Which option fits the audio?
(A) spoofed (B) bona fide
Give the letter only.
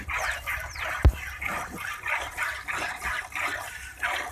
B